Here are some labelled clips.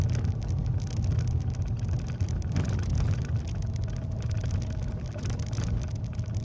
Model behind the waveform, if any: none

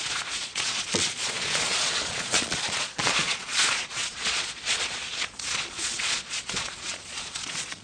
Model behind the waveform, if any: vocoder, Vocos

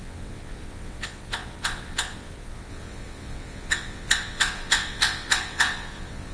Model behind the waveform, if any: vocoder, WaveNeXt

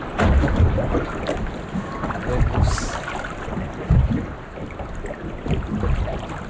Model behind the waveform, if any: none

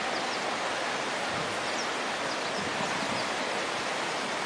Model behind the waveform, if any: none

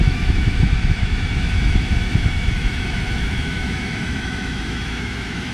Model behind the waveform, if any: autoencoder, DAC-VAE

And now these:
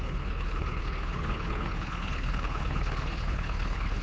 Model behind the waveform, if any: codec, HILCodec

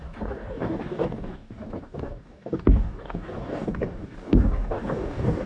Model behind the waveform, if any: codec, DAC